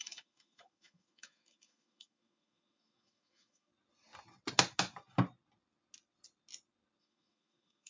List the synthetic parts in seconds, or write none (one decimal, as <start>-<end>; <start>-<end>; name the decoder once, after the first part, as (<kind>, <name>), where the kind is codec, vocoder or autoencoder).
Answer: 0.0-3.7 (autoencoder, DAC-VAE); 7.0-7.9

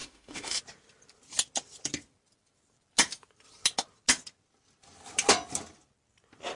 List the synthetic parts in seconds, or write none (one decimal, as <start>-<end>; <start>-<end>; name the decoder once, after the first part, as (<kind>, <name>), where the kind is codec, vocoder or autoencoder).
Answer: 0.0-0.6 (autoencoder, DAC-VAE)

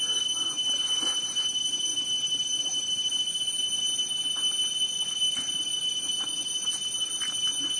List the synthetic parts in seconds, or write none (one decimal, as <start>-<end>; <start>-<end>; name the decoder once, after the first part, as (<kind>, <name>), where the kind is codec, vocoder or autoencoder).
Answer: none

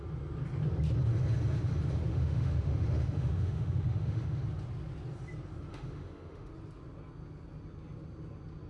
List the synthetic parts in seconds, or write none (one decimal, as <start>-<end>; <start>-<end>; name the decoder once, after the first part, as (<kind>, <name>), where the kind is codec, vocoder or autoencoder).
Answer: 2.1-4.4 (autoencoder, DAC-VAE); 5.7-6.5